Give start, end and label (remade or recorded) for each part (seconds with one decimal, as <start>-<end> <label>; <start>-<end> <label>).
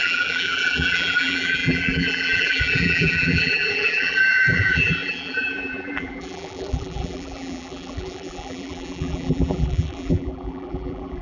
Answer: 0.0-11.2 remade